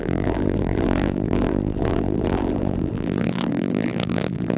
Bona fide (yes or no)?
no